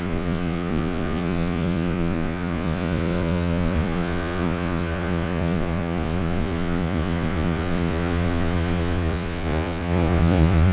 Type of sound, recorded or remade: remade